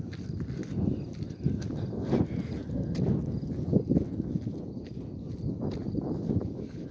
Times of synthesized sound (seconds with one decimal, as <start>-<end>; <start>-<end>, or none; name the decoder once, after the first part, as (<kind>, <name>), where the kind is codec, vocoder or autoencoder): none